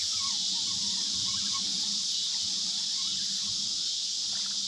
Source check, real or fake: real